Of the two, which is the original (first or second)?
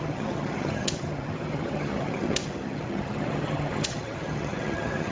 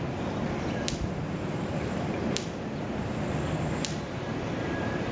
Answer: second